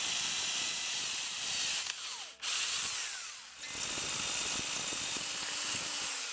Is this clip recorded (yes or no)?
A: yes